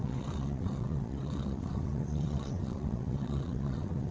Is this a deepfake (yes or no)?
yes